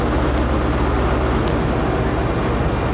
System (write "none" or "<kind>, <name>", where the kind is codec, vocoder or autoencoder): none